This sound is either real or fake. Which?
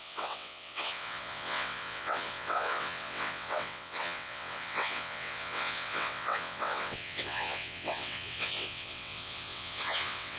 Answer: fake